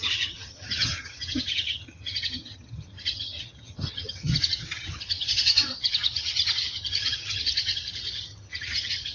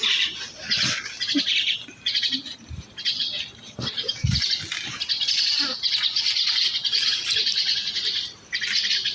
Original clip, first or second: second